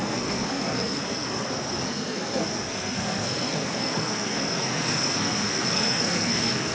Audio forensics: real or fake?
fake